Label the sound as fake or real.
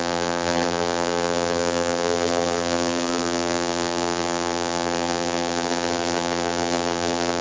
fake